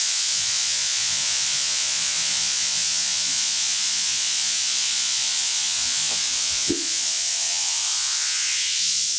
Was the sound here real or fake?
fake